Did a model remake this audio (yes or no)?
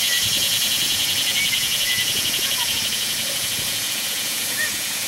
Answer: yes